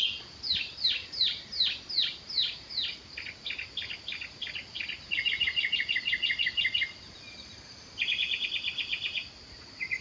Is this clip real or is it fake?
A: real